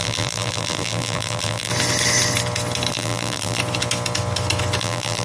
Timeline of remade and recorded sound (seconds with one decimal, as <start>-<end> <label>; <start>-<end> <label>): 0.0-1.7 remade; 1.7-2.9 recorded; 2.9-3.6 remade; 3.6-4.8 recorded; 4.8-5.2 remade